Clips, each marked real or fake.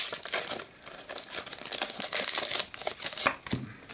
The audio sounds real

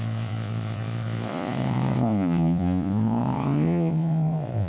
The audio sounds fake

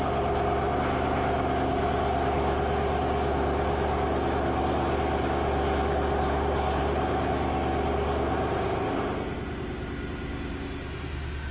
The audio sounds real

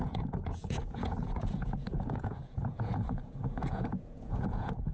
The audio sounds fake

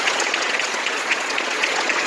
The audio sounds fake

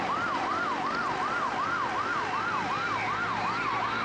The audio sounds real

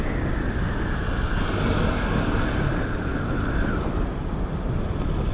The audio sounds real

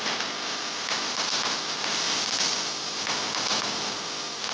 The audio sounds real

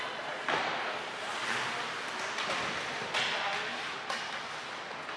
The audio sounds real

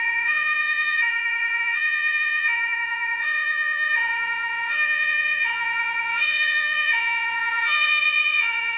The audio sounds fake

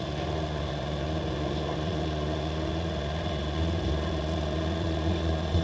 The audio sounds fake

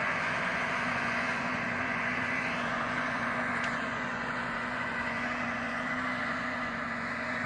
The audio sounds fake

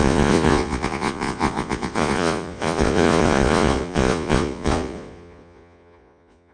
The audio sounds fake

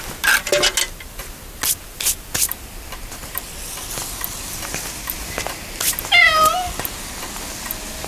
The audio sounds real